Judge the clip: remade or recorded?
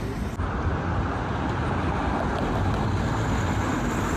recorded